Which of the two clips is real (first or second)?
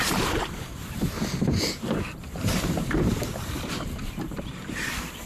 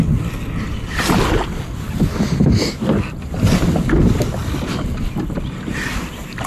second